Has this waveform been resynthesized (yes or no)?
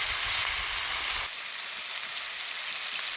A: no